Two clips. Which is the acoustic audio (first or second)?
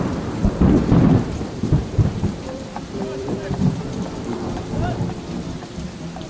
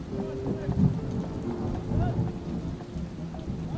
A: second